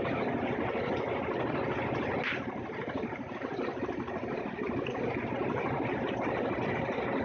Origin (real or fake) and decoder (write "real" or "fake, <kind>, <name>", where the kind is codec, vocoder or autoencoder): real